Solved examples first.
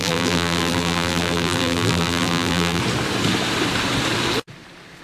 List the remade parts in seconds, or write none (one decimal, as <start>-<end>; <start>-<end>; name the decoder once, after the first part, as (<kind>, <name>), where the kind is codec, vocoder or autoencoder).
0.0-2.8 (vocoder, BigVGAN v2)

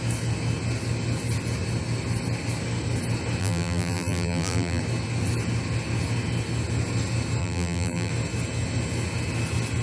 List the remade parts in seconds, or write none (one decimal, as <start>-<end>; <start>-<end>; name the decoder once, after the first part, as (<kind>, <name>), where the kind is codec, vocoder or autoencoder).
3.4-4.8 (vocoder, BigVGAN v2); 7.4-8.1

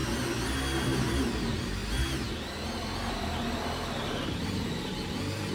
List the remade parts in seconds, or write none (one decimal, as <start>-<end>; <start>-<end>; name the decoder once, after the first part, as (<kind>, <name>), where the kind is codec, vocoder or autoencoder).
1.2-1.8 (vocoder, BigVGAN v2); 5.1-5.5